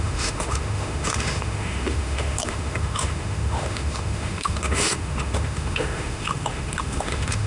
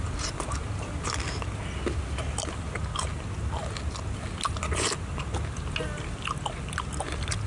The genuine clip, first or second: second